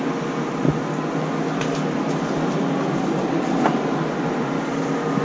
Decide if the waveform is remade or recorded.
recorded